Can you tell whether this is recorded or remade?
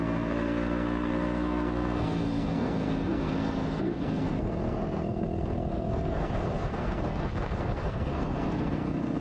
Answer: remade